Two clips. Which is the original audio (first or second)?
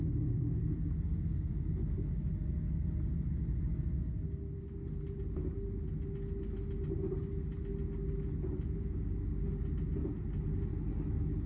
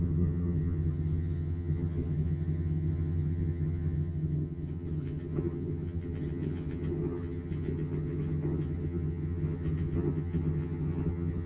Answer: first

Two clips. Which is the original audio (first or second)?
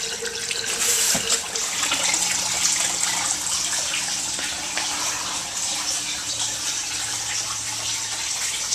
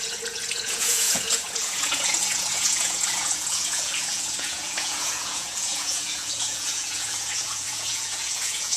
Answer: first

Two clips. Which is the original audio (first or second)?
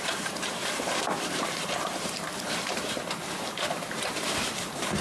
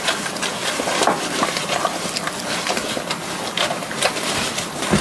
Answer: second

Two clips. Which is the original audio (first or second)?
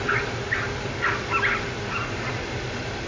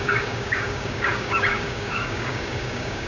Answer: first